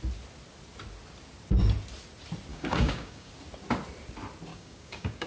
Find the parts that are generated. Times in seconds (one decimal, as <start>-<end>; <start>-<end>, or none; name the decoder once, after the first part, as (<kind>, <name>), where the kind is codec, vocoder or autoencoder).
2.5-3.3 (codec, DAC); 4.5-5.3